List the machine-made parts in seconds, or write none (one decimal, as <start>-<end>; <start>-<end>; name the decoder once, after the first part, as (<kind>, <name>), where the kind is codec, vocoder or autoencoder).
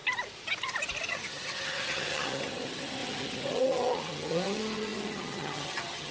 1.1-6.1 (vocoder, HiFi-GAN)